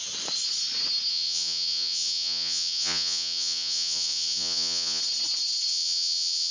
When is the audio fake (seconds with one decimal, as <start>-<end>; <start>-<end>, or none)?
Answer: 1.1-5.0; 5.7-6.5